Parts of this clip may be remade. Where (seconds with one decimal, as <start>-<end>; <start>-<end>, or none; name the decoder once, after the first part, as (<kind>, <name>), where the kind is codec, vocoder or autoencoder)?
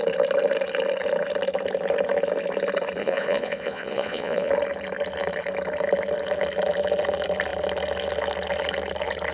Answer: 3.0-4.5 (vocoder, Vocos)